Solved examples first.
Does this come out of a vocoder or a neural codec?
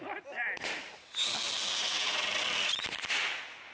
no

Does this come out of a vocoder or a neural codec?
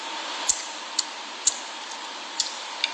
no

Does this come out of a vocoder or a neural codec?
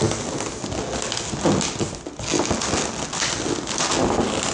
no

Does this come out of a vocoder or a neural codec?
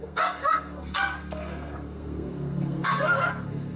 yes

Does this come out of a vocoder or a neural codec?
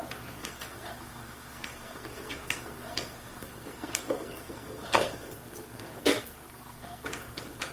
yes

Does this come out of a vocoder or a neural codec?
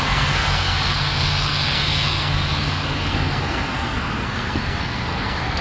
yes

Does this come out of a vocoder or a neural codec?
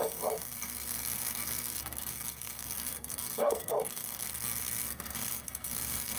yes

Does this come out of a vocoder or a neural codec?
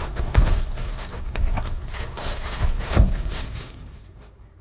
yes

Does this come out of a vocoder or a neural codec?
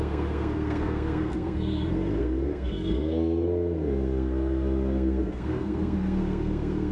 yes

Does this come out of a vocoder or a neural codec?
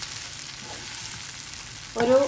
no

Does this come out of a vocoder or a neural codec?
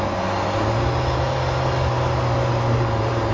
no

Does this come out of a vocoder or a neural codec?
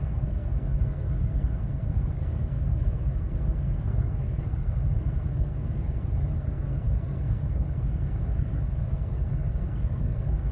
yes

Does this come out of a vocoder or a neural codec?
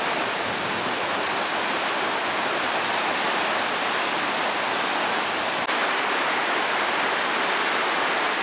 no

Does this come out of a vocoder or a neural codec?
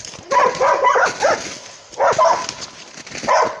no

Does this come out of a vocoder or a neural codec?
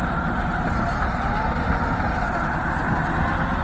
no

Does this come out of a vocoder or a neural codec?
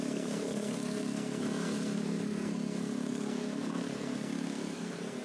yes